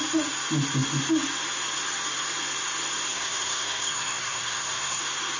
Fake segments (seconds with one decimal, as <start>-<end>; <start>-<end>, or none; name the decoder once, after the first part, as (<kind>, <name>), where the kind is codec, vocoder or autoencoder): 3.1-5.0 (codec, SNAC)